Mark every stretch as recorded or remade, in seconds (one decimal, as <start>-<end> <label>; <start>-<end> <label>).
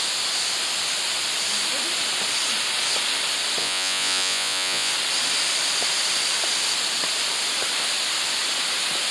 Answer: 0.0-3.6 recorded; 3.6-4.9 remade; 4.9-9.1 recorded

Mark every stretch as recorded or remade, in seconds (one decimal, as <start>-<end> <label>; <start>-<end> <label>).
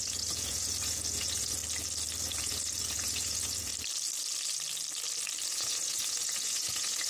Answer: 0.0-1.6 remade; 1.6-2.4 recorded; 2.4-3.7 remade; 3.7-5.5 recorded; 5.5-7.1 remade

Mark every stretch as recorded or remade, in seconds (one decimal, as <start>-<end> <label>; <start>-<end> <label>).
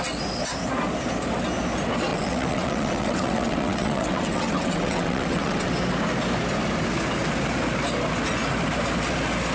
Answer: 0.0-2.1 recorded; 2.1-5.7 remade; 5.7-9.5 recorded